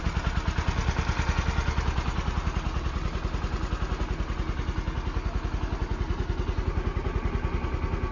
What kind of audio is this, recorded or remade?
recorded